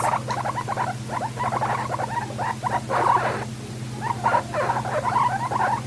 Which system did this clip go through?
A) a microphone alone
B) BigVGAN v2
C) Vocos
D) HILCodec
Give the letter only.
A